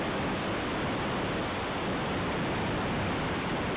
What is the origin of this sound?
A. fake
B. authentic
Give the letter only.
B